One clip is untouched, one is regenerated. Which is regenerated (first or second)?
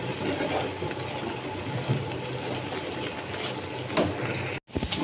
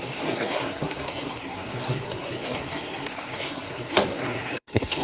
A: second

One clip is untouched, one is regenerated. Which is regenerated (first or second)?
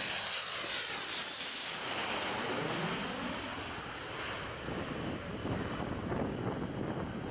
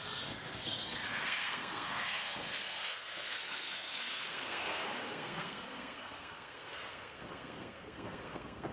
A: second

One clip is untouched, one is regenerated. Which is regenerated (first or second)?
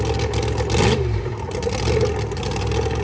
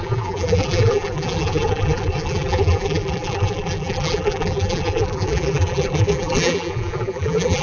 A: second